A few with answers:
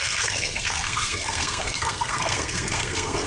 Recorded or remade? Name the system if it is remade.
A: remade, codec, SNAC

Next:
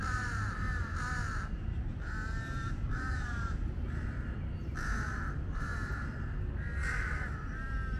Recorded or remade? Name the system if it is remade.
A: recorded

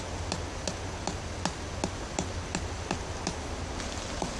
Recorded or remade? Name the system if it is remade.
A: recorded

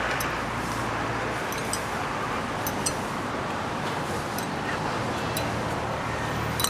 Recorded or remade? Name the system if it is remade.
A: recorded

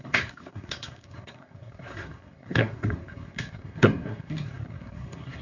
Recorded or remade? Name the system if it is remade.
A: remade, codec, SNAC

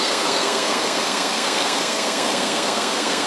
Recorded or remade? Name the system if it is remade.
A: remade, codec, SNAC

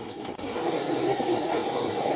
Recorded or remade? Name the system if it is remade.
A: remade, codec, SNAC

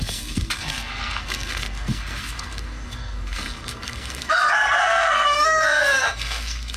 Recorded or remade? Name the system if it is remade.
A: remade, codec, SNAC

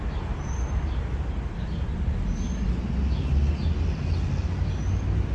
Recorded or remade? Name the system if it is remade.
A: recorded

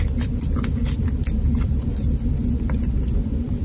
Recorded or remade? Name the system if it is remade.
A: recorded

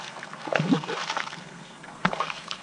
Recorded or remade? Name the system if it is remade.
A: remade, codec, SNAC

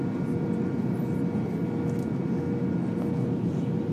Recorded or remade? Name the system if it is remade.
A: recorded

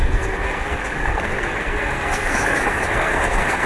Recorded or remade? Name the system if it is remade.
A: remade, codec, SNAC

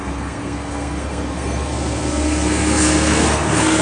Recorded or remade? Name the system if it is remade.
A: remade, codec, SNAC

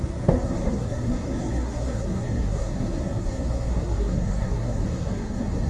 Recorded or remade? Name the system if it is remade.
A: remade, codec, SNAC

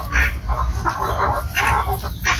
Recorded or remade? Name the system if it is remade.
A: recorded